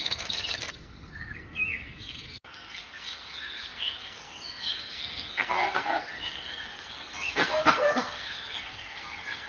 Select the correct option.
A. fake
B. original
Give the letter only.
A